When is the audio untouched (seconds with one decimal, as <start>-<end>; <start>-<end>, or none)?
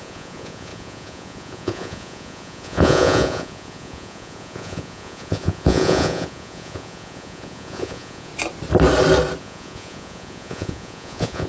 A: 8.3-9.4